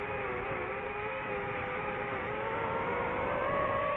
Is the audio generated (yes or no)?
yes